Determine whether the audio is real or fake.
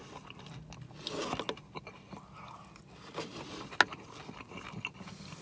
real